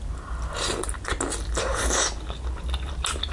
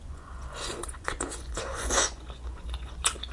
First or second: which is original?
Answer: first